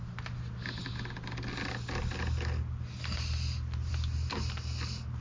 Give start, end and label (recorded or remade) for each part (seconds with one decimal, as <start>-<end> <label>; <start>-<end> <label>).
0.0-5.2 recorded